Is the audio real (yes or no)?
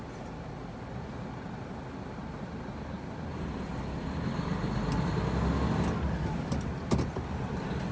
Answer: yes